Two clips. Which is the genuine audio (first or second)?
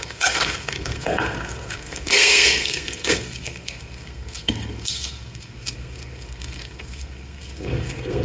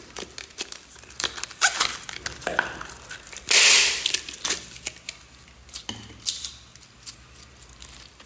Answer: second